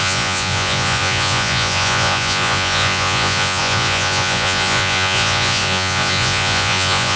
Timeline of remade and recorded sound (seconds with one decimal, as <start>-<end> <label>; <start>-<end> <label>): 0.0-7.2 remade